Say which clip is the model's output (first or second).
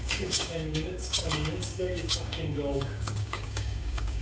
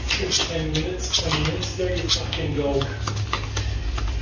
first